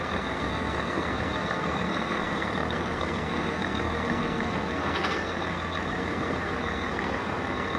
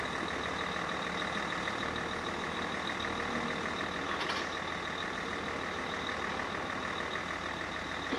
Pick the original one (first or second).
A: second